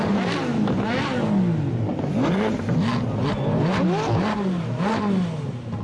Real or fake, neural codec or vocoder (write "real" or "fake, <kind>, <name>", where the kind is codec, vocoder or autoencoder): real